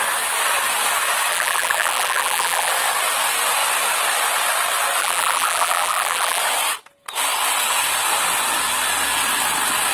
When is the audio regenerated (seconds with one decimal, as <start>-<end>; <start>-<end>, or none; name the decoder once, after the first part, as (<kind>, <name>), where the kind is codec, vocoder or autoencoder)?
1.3-2.7 (vocoder, BigVGAN v2); 5.0-6.4